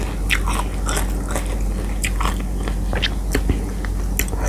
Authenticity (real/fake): real